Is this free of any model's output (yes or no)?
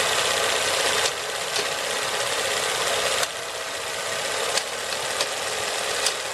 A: yes